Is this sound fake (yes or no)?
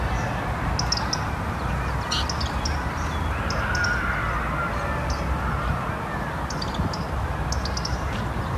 no